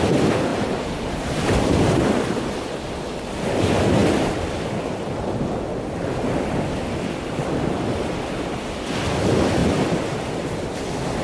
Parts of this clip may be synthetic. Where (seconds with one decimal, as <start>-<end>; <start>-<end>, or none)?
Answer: 0.5-2.4; 9.6-10.3